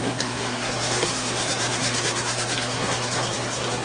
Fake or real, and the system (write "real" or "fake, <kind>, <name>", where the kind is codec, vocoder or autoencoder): fake, codec, SNAC